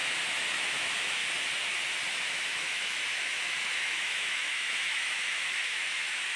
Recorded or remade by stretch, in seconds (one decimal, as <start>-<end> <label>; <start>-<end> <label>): 0.0-0.5 recorded; 0.5-1.2 remade; 1.2-2.1 recorded; 2.1-6.4 remade